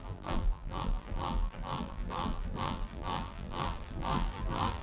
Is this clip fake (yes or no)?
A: yes